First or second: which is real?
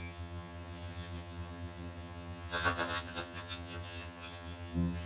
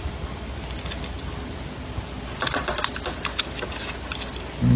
second